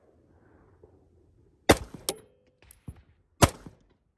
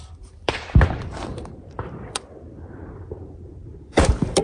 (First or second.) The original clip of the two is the first